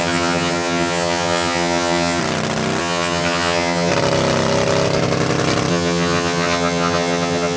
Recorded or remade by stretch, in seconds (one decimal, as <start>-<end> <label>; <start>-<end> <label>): 0.0-2.2 remade; 2.2-2.8 recorded; 2.8-3.9 remade; 3.9-5.7 recorded; 5.7-7.6 remade